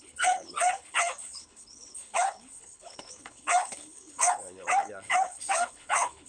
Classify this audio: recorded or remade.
remade